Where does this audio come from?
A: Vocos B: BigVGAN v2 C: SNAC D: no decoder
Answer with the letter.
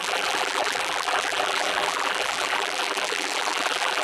B